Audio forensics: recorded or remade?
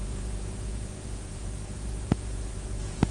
remade